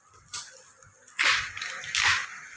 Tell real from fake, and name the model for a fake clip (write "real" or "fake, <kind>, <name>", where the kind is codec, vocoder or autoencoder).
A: real